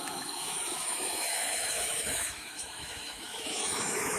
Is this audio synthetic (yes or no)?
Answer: yes